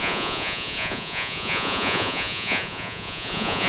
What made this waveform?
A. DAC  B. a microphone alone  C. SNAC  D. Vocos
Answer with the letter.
D